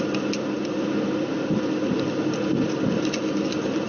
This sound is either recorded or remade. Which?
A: recorded